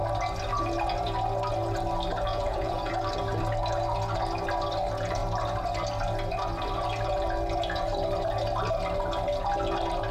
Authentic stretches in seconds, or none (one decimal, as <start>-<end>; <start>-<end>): 0.0-2.3; 2.9-10.1